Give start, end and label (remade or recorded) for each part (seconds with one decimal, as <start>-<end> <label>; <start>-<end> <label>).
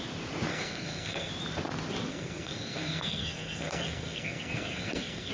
0.0-0.5 recorded; 0.5-1.3 remade; 1.3-2.1 recorded; 2.1-5.3 remade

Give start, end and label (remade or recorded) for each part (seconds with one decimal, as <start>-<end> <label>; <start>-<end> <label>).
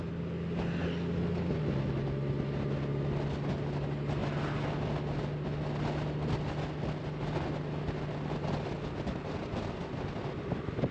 0.0-10.9 recorded